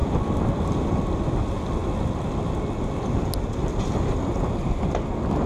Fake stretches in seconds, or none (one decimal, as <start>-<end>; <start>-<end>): 0.0-0.9